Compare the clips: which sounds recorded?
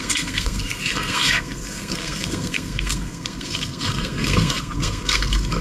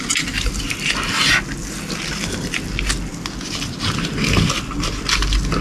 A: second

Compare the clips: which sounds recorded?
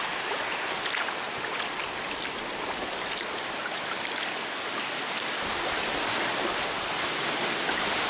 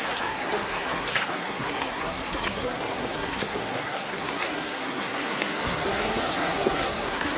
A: first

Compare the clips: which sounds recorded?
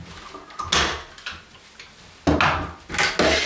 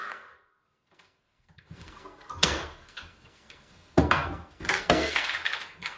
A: first